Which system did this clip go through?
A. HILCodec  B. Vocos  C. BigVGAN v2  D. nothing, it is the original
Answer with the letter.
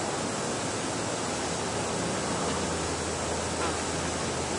D